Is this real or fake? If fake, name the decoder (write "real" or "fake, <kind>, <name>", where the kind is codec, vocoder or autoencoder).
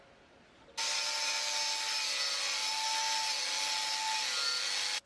real